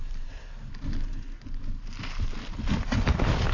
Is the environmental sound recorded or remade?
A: recorded